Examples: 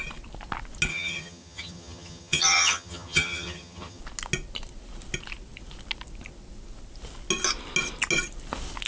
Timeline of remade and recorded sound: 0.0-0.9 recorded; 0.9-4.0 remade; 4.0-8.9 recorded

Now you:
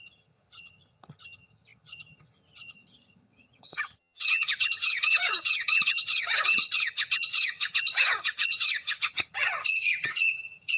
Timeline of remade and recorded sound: 0.0-10.8 remade

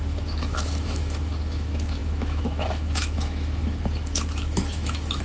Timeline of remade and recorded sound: 0.0-5.2 remade

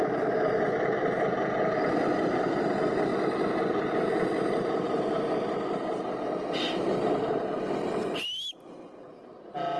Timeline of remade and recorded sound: 0.0-9.8 recorded

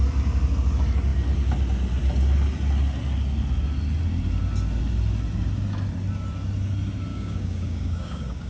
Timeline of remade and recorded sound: 0.0-7.1 recorded; 7.1-8.5 remade